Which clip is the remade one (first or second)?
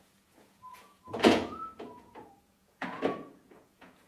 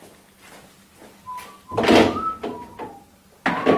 first